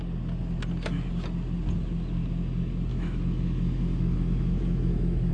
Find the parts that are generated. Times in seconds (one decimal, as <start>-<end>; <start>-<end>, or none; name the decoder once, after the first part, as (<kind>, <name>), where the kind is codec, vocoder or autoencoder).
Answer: 2.9-5.3 (autoencoder, DAC-VAE)